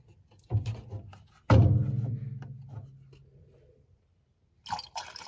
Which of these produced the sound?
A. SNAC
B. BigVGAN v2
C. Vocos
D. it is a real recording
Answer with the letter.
D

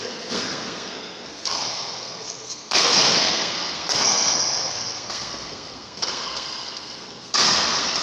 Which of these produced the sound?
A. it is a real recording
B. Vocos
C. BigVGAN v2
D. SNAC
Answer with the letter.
D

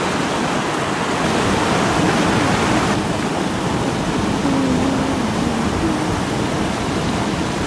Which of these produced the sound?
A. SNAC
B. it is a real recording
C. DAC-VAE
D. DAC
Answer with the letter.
B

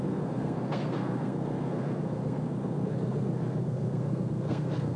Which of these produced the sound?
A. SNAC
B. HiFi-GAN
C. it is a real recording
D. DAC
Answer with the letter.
A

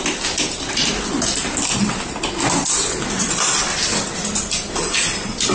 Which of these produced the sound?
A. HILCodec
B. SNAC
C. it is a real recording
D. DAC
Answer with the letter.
C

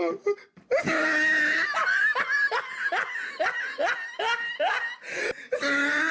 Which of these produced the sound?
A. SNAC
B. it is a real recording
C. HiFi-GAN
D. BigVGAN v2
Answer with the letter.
B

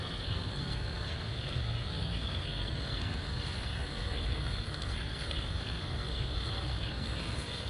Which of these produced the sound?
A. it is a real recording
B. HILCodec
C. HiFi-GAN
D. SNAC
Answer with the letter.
D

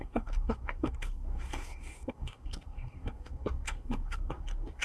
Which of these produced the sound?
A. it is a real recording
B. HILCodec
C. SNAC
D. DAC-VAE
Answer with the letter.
C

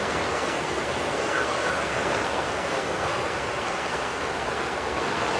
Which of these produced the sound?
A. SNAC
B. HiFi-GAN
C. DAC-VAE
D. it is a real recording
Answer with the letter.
A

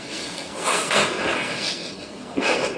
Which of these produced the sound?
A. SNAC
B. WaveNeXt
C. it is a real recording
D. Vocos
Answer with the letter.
A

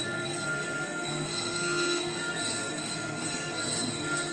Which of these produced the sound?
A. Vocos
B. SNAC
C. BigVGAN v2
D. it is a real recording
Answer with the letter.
B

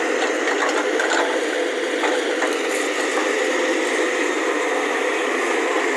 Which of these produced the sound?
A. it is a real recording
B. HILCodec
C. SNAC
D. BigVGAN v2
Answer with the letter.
A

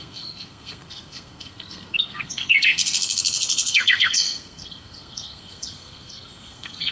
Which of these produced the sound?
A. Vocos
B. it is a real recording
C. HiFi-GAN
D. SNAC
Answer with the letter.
D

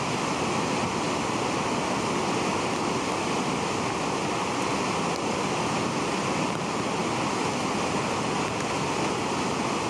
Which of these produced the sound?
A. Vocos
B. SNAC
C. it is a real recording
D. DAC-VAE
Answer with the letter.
C